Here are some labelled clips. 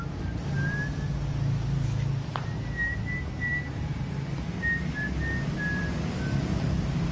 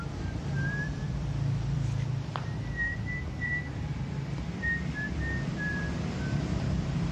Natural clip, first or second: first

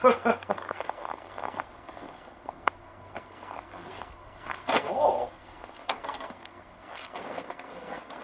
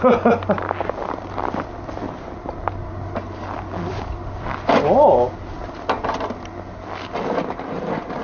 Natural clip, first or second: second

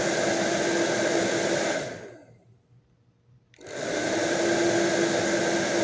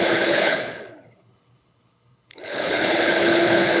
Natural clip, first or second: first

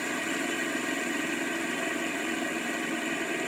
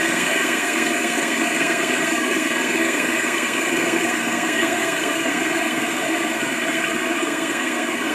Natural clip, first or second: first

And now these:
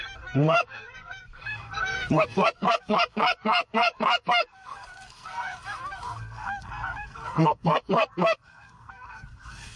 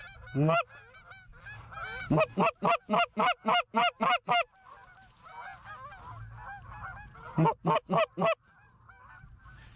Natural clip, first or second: second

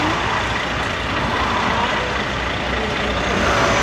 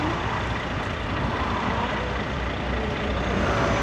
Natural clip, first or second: first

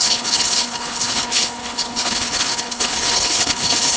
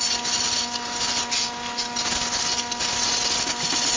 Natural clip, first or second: second